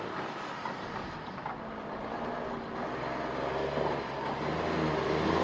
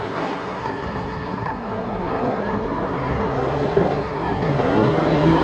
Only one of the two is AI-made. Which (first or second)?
second